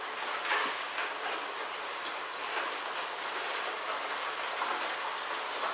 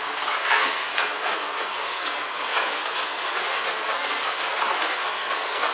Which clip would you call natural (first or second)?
first